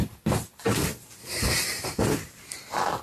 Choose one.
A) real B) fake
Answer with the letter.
A